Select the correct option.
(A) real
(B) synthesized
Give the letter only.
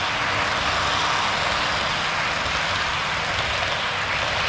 A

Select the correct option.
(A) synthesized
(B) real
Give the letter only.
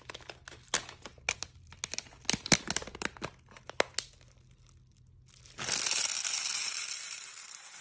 B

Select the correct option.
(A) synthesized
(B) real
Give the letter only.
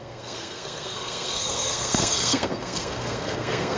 A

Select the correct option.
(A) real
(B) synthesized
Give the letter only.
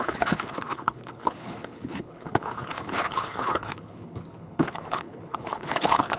B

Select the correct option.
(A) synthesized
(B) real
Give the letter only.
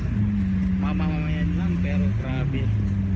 B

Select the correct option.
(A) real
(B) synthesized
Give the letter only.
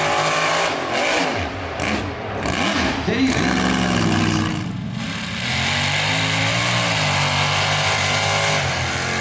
A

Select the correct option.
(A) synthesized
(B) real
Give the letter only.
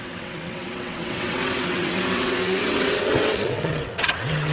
A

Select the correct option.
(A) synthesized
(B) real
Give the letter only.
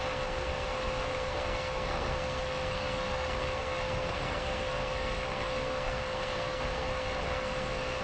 A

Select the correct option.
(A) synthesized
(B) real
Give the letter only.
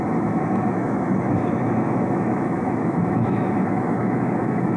A